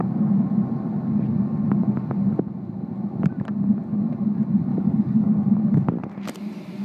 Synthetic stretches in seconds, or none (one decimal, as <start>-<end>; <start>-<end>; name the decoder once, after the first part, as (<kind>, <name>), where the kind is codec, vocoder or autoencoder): 4.7-5.3 (codec, DAC)